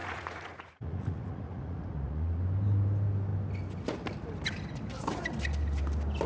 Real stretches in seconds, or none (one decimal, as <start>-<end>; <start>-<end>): 2.4-6.3